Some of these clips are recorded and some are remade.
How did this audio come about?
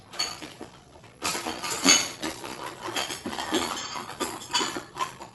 remade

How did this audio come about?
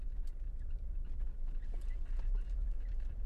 remade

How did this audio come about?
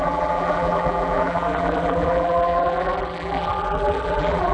remade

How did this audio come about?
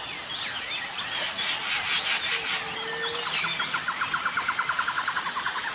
recorded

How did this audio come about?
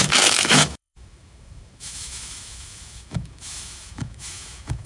remade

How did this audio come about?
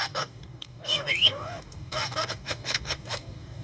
remade